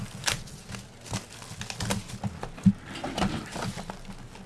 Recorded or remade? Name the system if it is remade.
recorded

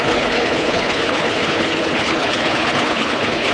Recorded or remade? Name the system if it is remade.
remade, codec, HILCodec